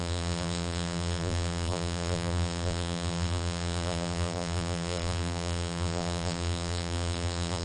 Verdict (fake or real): fake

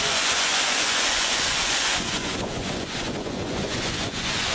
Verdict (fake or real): fake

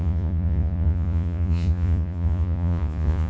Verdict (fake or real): fake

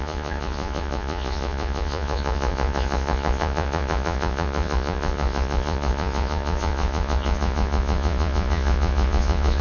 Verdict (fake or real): fake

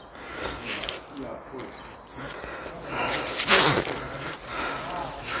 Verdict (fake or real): real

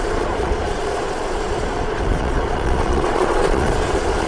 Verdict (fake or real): fake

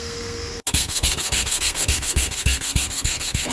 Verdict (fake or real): fake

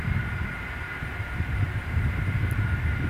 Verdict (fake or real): fake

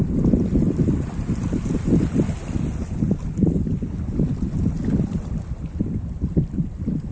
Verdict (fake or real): real